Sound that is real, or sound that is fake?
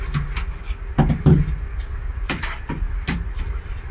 fake